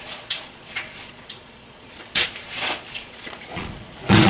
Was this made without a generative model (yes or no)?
no